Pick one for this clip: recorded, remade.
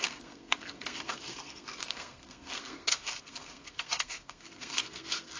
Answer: remade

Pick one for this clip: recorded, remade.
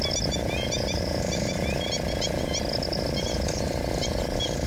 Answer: recorded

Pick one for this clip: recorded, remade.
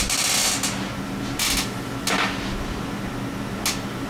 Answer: recorded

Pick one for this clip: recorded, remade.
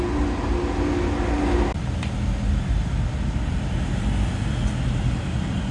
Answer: recorded